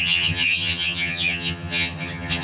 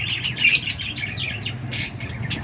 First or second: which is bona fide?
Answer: second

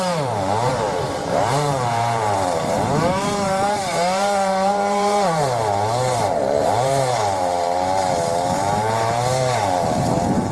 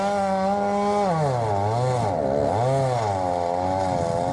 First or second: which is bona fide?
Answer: second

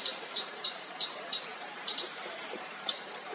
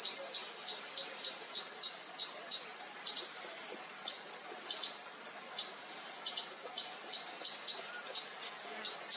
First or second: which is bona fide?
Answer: second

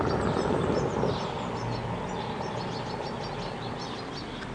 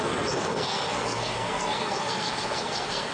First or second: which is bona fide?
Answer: first